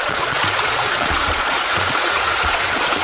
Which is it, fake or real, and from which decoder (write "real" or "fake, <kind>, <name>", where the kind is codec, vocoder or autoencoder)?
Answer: fake, vocoder, Vocos